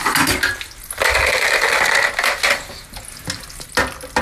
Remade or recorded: recorded